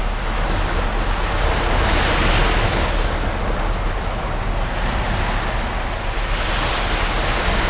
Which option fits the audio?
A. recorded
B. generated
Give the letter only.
A